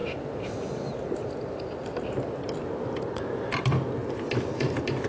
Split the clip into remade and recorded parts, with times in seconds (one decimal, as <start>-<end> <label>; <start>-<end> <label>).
0.0-5.1 recorded